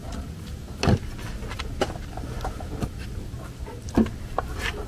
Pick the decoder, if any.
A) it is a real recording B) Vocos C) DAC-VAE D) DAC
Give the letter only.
A